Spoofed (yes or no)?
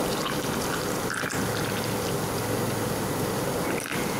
no